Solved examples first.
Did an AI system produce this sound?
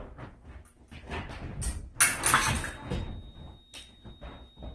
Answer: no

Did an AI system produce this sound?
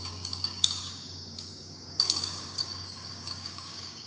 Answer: yes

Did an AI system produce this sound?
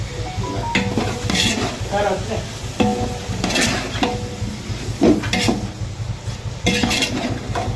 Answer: no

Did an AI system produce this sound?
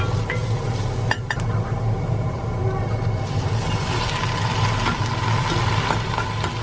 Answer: no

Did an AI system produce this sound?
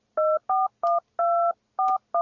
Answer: no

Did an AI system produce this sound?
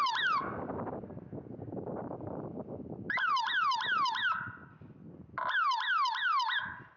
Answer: no